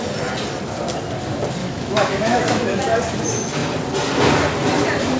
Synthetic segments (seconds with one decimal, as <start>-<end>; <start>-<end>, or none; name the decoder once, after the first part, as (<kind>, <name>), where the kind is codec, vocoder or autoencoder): 1.6-2.8 (autoencoder, DAC-VAE)